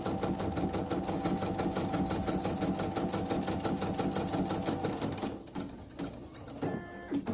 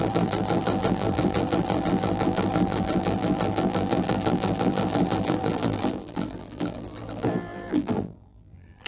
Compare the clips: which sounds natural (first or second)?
first